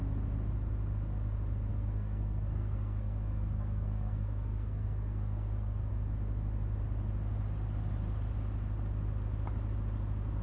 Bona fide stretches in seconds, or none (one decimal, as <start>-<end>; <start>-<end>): 0.0-1.7; 5.9-10.4